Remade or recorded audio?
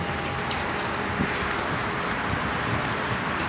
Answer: remade